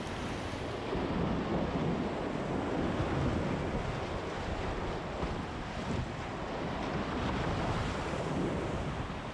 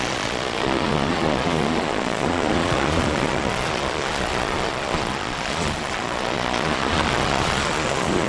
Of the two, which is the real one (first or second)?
first